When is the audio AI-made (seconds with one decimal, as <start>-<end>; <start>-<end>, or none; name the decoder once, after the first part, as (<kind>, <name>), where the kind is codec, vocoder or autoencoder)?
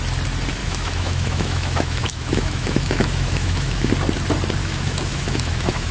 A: 0.6-3.9 (autoencoder, DAC-VAE); 4.6-5.9